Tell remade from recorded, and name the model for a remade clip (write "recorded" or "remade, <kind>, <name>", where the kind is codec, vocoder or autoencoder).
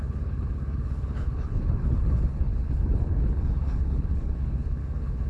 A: remade, codec, HILCodec